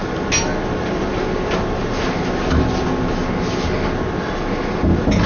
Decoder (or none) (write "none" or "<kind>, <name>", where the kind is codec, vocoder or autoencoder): none